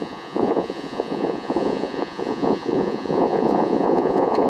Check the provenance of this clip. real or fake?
fake